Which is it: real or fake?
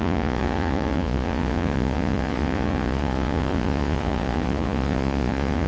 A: fake